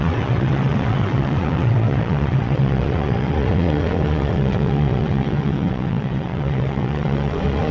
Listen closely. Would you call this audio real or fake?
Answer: fake